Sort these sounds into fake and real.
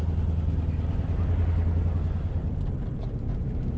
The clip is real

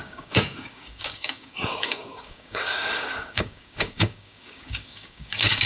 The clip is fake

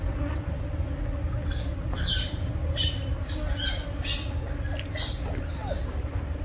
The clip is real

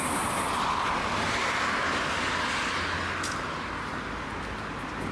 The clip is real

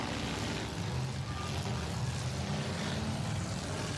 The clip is real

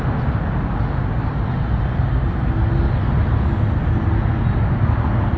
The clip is real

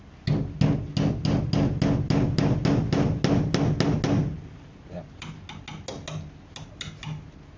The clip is real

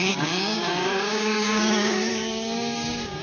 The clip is fake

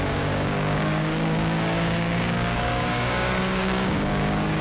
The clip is fake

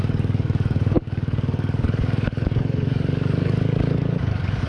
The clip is fake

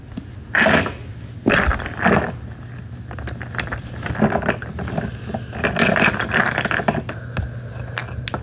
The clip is real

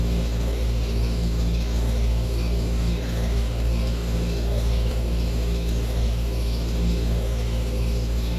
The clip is fake